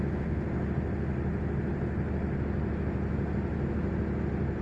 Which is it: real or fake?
real